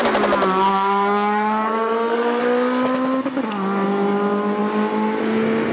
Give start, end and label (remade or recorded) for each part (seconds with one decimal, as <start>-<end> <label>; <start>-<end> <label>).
0.0-0.7 recorded; 0.7-2.4 remade; 2.4-5.7 recorded